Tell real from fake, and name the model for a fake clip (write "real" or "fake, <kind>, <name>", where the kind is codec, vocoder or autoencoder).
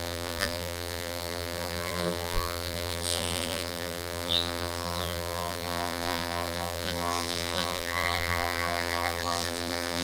fake, vocoder, BigVGAN v2